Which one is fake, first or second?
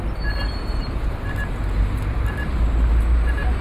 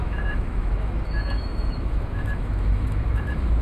second